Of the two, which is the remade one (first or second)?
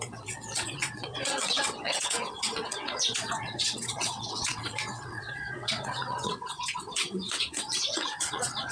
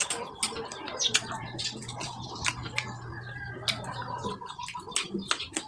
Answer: first